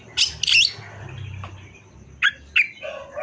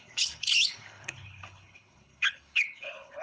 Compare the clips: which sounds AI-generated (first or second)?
second